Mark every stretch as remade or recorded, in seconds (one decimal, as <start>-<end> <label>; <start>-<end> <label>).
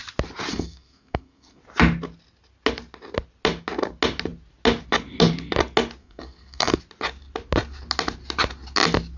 0.0-0.5 recorded; 0.5-1.6 remade; 1.6-6.0 recorded; 6.0-6.8 remade; 6.8-9.2 recorded